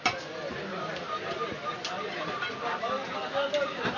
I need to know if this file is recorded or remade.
recorded